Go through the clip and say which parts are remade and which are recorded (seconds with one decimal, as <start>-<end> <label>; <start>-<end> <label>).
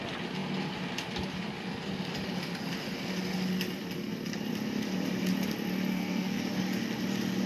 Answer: 0.0-5.9 recorded; 5.9-6.4 remade; 6.4-7.5 recorded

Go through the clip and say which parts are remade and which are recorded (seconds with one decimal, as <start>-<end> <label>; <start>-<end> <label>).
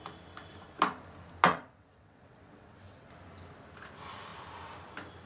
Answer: 0.0-1.5 recorded; 1.5-3.1 remade; 3.1-5.3 recorded